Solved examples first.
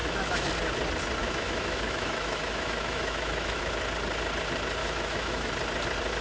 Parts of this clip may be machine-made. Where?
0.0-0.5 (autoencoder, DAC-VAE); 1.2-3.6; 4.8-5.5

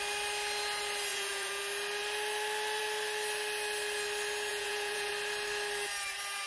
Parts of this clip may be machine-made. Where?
1.1-1.6 (vocoder, Vocos); 4.5-5.1

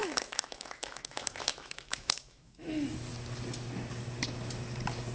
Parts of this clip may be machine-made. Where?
0.0-2.7 (autoencoder, DAC-VAE)

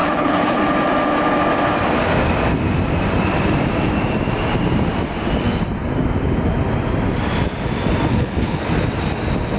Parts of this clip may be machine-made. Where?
0.0-0.6 (codec, HILCodec); 8.1-8.6

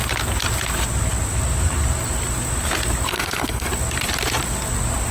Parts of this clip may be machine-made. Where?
3.1-3.7 (codec, SNAC)

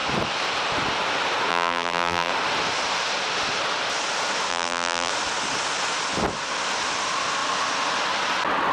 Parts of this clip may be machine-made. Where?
1.5-2.3 (vocoder, BigVGAN v2); 4.5-5.1

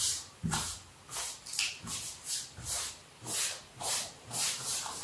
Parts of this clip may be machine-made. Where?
0.0-0.8 (vocoder, BigVGAN v2); 3.6-5.0

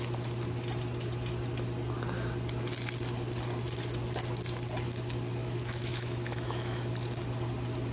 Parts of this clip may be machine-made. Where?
5.4-6.9 (autoencoder, DAC-VAE)